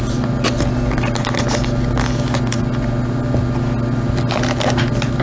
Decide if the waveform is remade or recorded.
recorded